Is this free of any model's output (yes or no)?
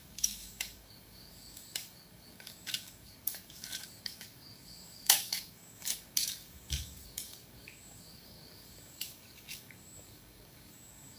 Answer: no